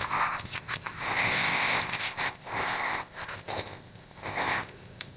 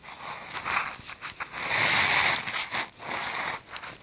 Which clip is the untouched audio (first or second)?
second